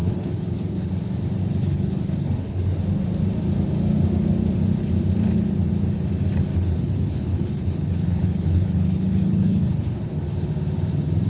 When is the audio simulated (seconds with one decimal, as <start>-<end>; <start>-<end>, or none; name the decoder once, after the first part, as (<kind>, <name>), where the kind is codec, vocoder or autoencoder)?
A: 0.0-0.9 (codec, HILCodec); 1.4-2.8; 6.5-10.5